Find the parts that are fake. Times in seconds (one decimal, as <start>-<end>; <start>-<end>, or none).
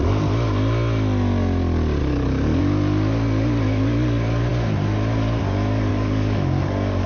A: 2.0-2.6; 5.9-7.1